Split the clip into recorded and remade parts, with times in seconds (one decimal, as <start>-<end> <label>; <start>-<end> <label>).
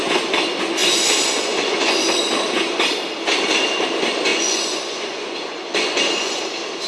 0.0-0.8 recorded; 0.8-2.0 remade; 2.0-4.3 recorded; 4.3-6.4 remade; 6.4-6.9 recorded